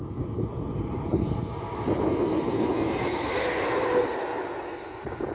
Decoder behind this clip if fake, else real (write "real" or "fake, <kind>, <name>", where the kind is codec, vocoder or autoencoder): real